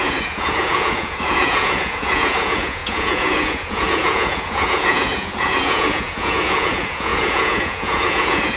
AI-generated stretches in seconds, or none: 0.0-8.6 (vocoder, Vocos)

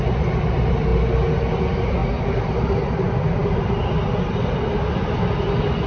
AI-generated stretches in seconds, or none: none

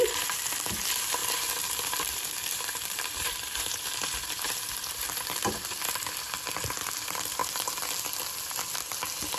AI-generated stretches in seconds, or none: 1.2-6.1 (vocoder, BigVGAN v2)

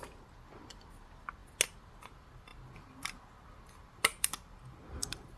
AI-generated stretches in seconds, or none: none

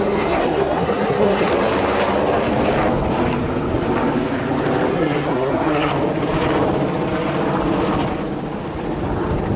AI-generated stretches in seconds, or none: 0.0-1.5 (codec, SNAC); 4.9-5.9

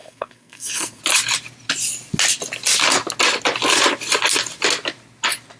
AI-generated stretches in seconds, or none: 0.0-1.0 (codec, SNAC)

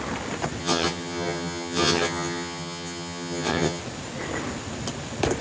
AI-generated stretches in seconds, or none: 0.6-3.8 (vocoder, HiFi-GAN)

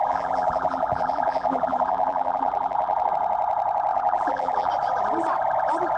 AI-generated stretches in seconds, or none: 0.0-3.1 (vocoder, BigVGAN v2); 3.9-4.7